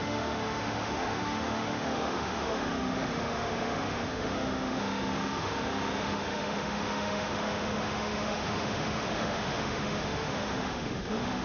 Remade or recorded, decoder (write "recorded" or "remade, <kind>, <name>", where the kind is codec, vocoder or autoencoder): remade, autoencoder, DAC-VAE